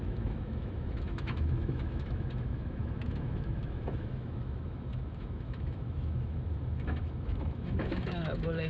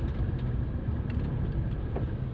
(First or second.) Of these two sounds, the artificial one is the first